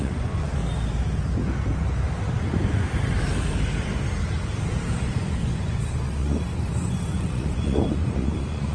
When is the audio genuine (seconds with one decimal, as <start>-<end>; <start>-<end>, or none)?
0.6-4.9